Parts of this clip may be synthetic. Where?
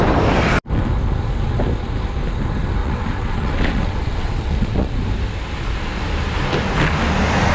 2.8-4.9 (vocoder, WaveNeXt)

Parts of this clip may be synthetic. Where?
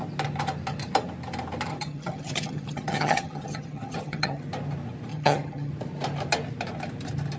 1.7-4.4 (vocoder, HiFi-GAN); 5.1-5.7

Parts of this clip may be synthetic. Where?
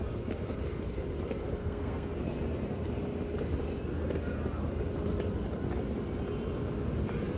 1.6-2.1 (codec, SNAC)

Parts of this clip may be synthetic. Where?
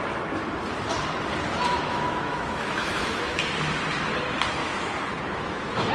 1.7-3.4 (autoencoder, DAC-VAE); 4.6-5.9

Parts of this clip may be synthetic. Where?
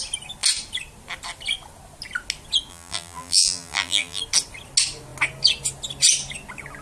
2.7-4.2 (vocoder, BigVGAN v2)